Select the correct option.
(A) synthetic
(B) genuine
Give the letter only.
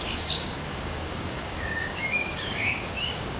A